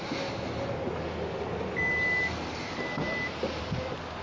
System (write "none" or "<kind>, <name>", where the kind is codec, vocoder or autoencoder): none